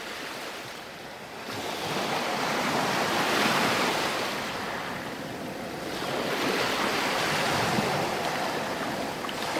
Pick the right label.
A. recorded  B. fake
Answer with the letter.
A